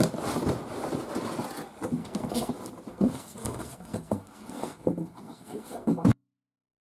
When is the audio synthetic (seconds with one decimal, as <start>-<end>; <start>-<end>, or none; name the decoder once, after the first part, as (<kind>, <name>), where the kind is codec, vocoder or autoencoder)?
2.0-2.5 (codec, SNAC); 2.9-6.8